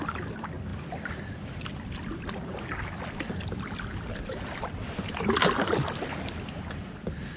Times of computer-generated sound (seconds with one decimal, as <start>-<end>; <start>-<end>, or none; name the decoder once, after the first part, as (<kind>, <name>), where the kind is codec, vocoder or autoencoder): none